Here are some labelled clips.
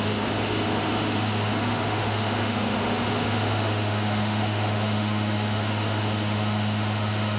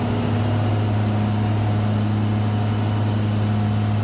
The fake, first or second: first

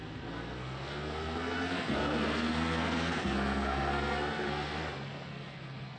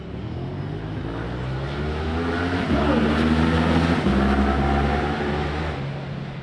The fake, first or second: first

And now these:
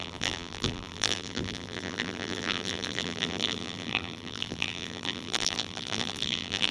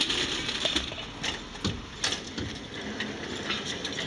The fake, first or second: first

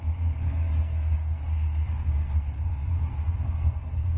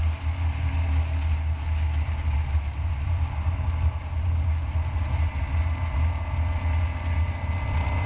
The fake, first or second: first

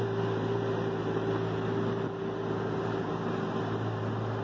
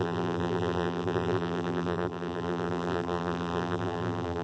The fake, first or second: second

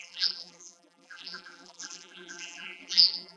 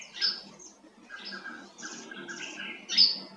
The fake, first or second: first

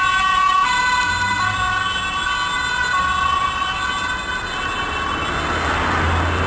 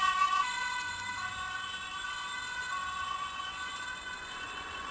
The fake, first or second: second